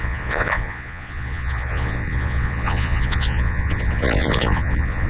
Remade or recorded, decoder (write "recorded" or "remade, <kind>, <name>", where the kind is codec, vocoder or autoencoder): remade, vocoder, Vocos